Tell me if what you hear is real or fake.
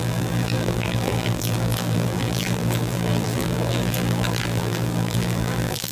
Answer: fake